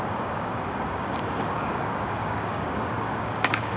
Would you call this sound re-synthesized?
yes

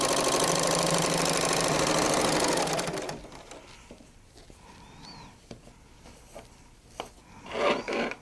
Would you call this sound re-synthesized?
no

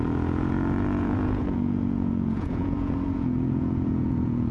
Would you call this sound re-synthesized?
yes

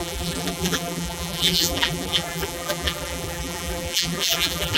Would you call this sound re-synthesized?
yes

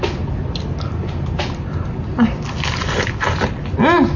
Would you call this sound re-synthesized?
no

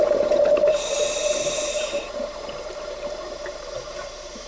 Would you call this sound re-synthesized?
yes